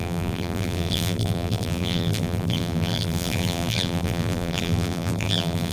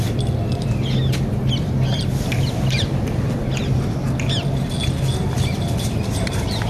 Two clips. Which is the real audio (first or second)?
second